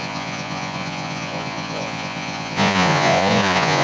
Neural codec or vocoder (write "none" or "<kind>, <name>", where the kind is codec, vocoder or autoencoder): vocoder, Vocos